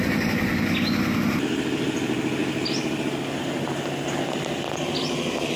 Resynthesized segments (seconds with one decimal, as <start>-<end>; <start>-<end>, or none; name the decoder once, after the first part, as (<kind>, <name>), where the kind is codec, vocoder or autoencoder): 2.4-3.4 (vocoder, BigVGAN v2)